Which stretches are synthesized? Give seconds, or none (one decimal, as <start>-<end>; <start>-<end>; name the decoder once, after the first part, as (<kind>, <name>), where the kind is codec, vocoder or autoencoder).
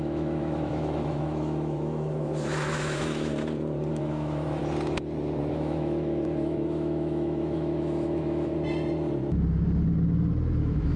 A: 0.0-3.3 (autoencoder, DAC-VAE); 3.9-4.6; 5.5-8.5; 10.6-11.0